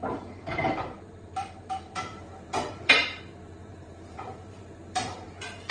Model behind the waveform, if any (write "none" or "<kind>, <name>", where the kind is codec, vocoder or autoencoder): vocoder, BigVGAN v2